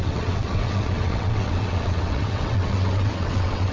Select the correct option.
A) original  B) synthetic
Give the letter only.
B